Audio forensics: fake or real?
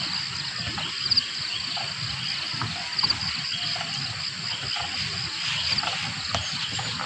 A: real